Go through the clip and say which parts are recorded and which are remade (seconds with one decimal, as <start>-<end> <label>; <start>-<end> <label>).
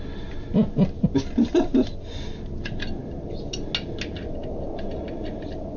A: 0.0-5.8 recorded